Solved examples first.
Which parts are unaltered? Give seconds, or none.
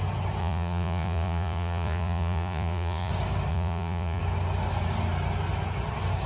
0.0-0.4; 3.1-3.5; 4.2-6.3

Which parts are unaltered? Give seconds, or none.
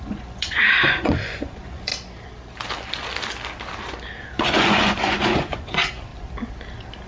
1.9-4.2; 6.1-7.1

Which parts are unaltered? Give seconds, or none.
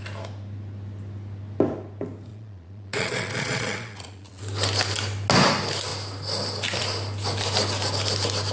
0.0-2.3; 4.4-8.5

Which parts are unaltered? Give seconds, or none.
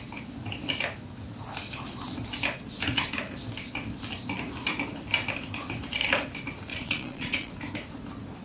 0.0-6.7; 7.5-8.4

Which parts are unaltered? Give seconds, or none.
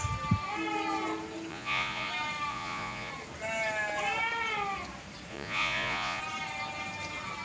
0.0-1.5; 2.1-2.5; 3.1-5.3; 6.2-7.4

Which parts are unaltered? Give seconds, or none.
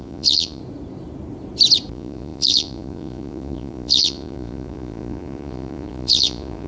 0.6-1.9